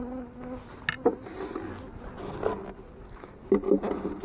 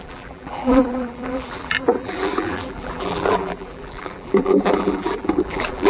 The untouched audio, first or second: first